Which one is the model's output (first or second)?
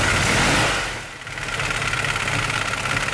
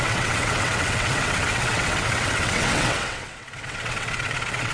second